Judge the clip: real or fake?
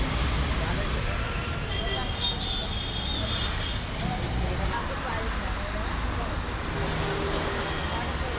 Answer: real